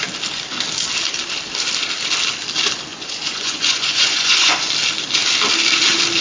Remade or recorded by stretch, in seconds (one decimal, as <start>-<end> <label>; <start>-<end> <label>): 0.0-2.9 recorded; 2.9-4.7 remade; 4.7-6.2 recorded